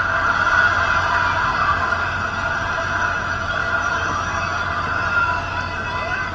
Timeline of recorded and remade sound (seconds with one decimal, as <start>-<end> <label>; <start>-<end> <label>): 0.0-1.4 recorded; 1.4-2.2 remade; 2.2-6.3 recorded